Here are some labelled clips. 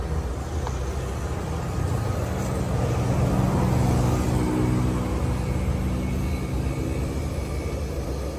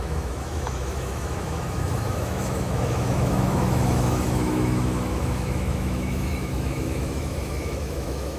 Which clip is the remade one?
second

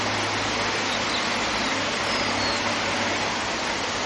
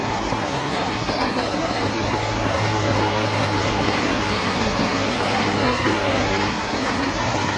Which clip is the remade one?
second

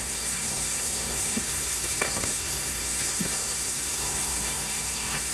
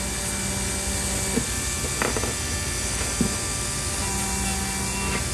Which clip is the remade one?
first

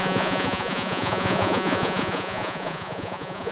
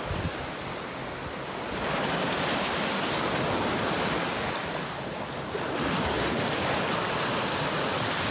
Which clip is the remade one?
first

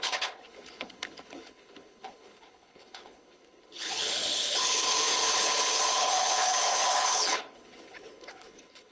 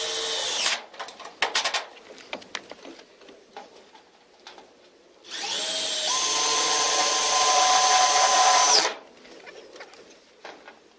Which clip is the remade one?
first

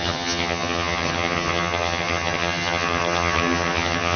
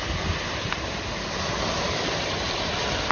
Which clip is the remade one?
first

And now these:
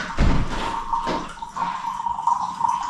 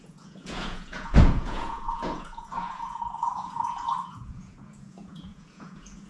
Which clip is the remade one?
second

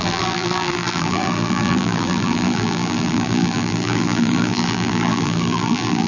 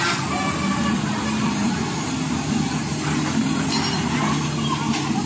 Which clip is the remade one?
first